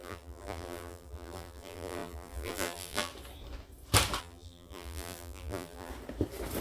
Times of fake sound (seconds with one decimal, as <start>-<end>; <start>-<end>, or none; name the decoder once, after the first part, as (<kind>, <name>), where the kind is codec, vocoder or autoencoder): 0.0-3.1 (vocoder, BigVGAN v2); 4.2-5.9